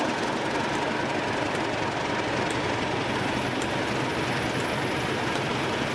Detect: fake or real real